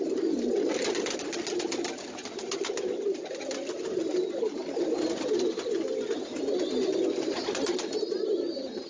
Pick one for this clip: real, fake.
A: real